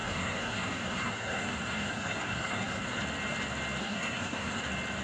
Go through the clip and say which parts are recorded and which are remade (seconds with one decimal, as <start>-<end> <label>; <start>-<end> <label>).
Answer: 0.0-3.0 remade; 3.0-3.8 recorded; 3.8-4.6 remade; 4.6-5.0 recorded